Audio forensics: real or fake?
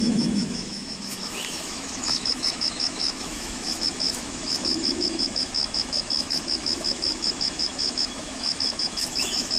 fake